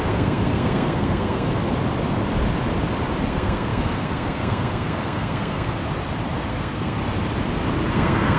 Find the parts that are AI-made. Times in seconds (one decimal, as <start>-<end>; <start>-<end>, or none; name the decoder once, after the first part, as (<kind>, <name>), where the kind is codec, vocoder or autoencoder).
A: 0.0-1.6 (codec, SNAC); 3.2-5.8; 6.5-7.0; 7.9-8.4